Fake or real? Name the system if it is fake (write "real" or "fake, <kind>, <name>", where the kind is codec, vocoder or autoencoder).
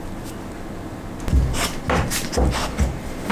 real